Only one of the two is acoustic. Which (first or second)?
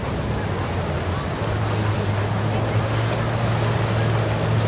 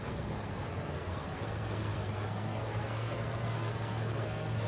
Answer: first